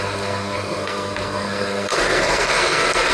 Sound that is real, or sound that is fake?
fake